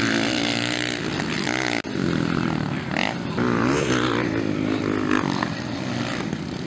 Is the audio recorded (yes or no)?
yes